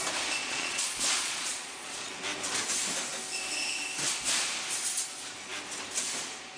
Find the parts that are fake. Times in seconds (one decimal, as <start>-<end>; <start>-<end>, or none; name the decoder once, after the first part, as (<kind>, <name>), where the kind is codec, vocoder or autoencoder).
0.4-2.1 (vocoder, Vocos)

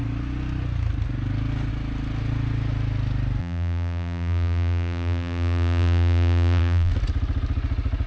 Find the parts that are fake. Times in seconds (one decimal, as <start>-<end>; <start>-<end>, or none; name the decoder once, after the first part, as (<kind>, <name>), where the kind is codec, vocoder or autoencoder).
3.4-6.9 (vocoder, BigVGAN v2)

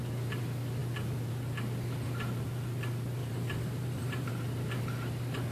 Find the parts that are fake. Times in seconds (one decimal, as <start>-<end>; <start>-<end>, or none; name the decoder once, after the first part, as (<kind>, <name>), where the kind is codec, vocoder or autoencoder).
3.2-4.4 (vocoder, BigVGAN v2)

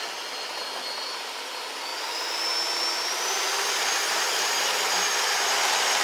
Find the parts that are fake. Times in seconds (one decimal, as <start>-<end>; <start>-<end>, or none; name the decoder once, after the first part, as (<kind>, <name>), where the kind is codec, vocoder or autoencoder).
none

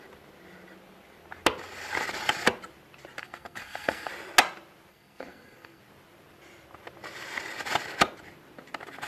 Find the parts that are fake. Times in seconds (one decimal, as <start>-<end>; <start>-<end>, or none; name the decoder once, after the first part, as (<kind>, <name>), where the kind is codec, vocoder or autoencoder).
3.2-4.1 (codec, SNAC); 4.9-5.8

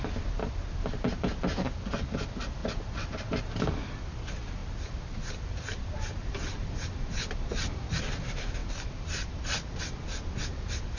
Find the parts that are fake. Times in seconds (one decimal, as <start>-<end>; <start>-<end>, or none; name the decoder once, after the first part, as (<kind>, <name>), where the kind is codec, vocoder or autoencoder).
2.6-3.1 (vocoder, BigVGAN v2); 4.6-5.3; 5.7-8.0; 8.6-9.7

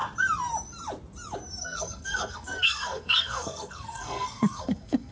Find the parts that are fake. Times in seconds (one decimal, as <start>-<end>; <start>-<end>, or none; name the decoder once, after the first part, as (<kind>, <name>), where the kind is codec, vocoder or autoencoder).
1.6-5.1 (codec, SNAC)